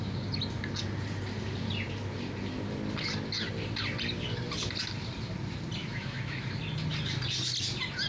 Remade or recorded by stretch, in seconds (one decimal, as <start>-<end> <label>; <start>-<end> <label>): 0.0-5.8 recorded; 5.8-6.5 remade; 6.5-8.1 recorded